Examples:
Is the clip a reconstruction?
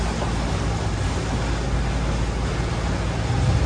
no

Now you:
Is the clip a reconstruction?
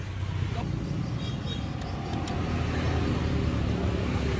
no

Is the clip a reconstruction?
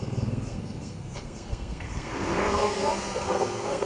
yes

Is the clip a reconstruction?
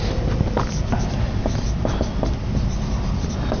no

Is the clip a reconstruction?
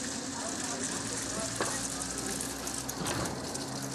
no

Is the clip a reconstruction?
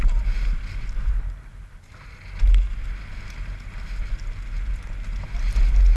no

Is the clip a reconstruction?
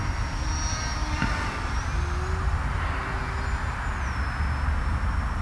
no